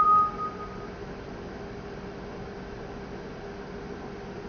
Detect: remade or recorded recorded